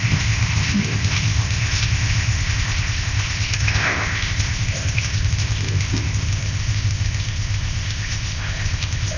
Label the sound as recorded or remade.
remade